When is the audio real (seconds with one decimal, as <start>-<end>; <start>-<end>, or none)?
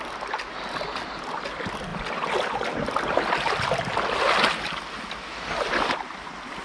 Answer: 0.0-6.6